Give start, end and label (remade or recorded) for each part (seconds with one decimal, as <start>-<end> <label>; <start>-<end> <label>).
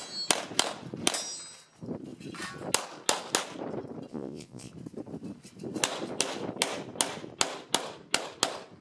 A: 0.0-4.1 recorded; 4.1-4.7 remade; 4.7-8.8 recorded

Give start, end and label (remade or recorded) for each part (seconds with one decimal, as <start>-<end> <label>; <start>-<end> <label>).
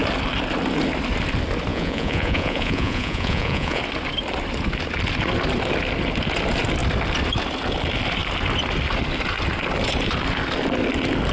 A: 0.0-1.7 recorded; 1.7-3.8 remade; 3.8-11.3 recorded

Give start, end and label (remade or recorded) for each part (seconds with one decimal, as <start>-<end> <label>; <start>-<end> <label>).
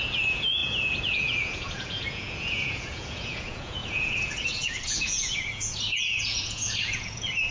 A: 0.0-7.5 remade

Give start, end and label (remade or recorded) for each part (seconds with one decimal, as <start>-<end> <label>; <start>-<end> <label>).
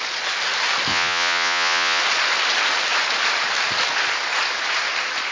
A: 0.0-0.9 recorded; 0.9-2.0 remade; 2.0-5.3 recorded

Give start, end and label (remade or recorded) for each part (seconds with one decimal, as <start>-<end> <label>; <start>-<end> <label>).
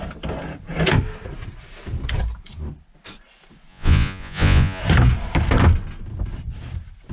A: 0.0-3.7 recorded; 3.7-4.8 remade; 4.8-7.1 recorded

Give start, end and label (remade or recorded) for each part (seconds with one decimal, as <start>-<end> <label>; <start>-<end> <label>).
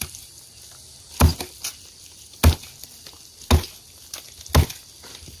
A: 0.0-5.4 recorded